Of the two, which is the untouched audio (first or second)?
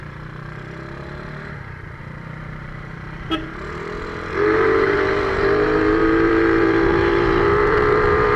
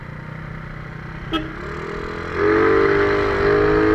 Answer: second